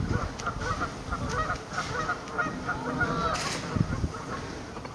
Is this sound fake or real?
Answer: real